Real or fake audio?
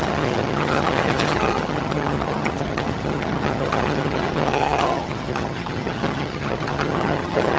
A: fake